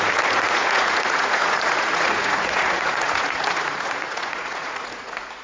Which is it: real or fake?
fake